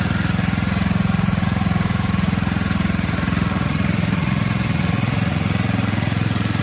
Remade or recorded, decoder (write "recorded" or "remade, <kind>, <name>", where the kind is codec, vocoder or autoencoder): remade, vocoder, Vocos